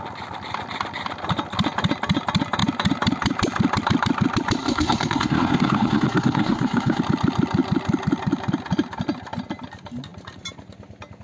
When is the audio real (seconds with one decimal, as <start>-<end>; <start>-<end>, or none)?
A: 0.0-4.6; 7.0-11.2